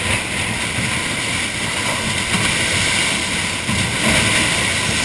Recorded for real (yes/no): yes